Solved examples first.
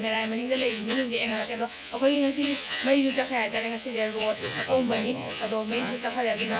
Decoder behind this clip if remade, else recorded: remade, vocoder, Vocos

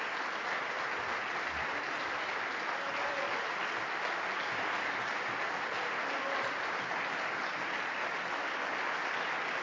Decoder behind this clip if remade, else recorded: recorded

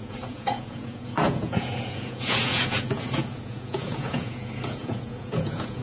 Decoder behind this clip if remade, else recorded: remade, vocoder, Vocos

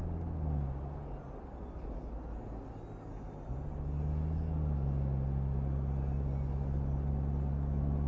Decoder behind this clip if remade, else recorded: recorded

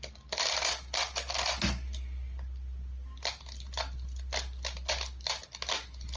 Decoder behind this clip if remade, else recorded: recorded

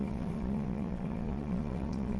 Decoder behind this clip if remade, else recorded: remade, vocoder, Vocos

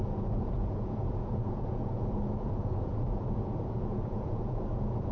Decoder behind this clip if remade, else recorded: remade, vocoder, Vocos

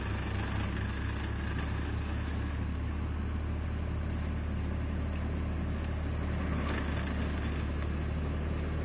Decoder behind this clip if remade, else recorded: recorded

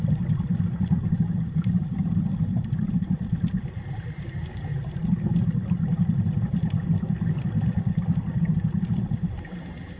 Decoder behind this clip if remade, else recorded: recorded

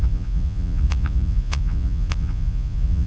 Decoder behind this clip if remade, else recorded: remade, vocoder, Vocos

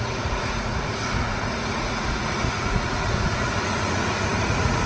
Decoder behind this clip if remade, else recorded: remade, vocoder, Vocos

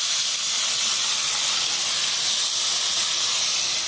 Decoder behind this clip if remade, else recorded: recorded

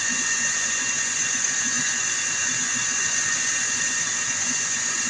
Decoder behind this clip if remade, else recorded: remade, vocoder, Vocos